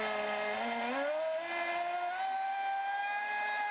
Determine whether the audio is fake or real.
real